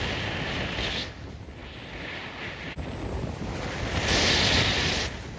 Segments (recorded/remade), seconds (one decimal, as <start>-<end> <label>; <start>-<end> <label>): 0.0-5.4 recorded